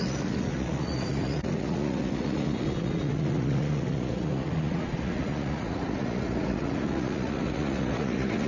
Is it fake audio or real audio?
fake